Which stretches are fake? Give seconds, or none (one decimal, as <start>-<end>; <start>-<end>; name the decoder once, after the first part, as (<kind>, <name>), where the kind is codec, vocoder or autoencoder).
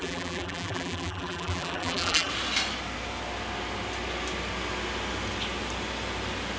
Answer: 0.0-2.3 (vocoder, BigVGAN v2)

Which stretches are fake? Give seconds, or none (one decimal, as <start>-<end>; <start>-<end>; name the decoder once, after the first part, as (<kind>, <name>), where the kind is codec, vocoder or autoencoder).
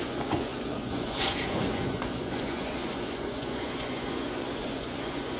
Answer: 0.0-5.4 (vocoder, Vocos)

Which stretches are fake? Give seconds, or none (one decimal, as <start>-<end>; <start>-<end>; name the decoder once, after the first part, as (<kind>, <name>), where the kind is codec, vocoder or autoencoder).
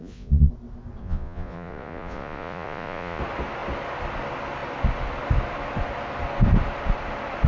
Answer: 0.0-0.5 (vocoder, Vocos); 1.0-3.2